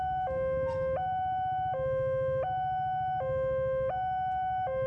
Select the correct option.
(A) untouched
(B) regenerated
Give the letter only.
A